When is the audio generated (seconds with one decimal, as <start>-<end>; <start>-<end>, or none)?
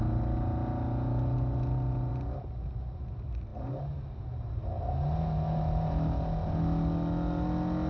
none